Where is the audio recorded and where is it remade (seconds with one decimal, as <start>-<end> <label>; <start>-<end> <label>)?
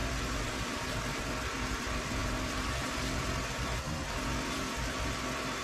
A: 0.0-5.6 recorded